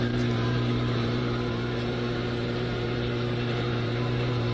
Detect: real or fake fake